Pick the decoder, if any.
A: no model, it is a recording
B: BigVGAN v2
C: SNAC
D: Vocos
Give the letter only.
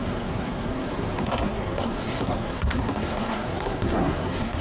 C